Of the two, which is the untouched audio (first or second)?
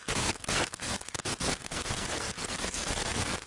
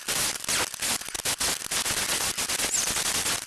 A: second